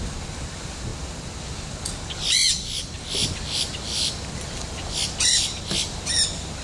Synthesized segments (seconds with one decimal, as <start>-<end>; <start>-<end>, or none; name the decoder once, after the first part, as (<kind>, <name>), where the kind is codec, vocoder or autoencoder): none